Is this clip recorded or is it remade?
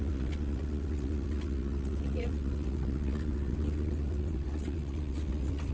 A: remade